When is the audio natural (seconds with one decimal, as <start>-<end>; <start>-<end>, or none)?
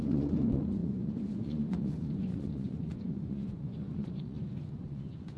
none